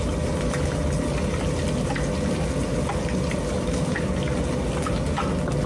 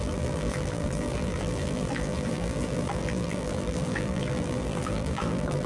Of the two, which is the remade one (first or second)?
second